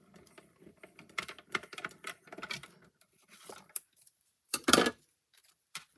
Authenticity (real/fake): fake